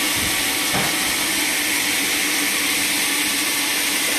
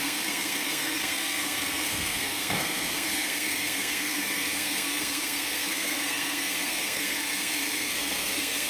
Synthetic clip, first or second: second